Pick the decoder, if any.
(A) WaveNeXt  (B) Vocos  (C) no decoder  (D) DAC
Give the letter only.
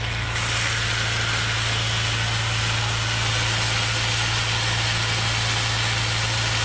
C